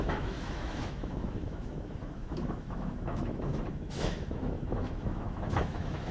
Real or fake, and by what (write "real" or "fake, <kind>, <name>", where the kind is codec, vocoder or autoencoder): fake, autoencoder, DAC-VAE